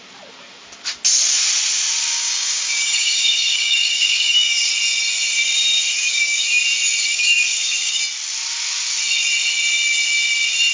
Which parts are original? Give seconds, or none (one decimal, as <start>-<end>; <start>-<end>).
0.0-2.1; 4.7-6.0; 6.6-7.0; 8.0-10.7